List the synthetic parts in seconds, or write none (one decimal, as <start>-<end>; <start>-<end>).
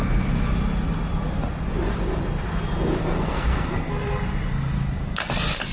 3.0-3.9